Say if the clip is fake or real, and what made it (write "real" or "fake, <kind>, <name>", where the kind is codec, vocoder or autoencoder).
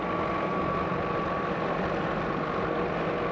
real